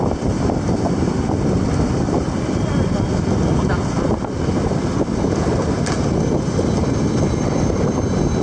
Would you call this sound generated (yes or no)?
no